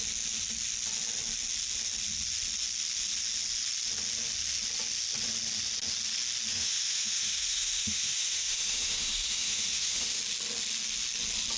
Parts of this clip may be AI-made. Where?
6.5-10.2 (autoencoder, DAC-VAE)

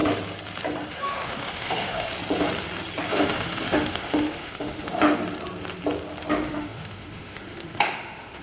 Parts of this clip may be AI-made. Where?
1.0-2.1 (autoencoder, DAC-VAE); 3.1-5.2; 6.3-8.4

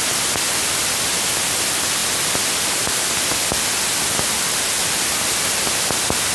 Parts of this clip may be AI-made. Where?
none